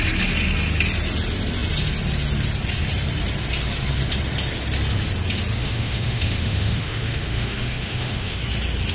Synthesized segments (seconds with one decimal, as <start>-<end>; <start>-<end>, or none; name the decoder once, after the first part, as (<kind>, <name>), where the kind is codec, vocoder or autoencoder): 5.6-8.4 (autoencoder, DAC-VAE)